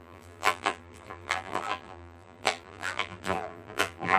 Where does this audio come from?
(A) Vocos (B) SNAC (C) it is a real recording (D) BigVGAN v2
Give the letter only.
D